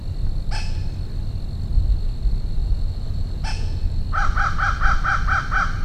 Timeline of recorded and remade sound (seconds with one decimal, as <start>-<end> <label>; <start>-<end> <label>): 0.0-2.6 recorded; 2.6-4.0 remade; 4.0-5.8 recorded